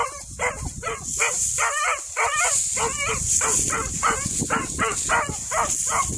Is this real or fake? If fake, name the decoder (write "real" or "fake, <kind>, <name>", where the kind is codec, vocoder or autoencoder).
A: real